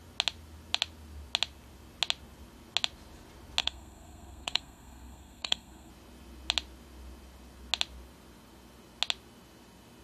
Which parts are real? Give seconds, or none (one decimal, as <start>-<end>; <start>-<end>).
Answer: 0.0-3.6; 5.9-10.0